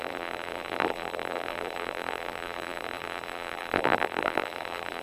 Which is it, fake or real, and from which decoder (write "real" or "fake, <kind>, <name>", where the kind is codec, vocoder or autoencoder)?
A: fake, vocoder, BigVGAN v2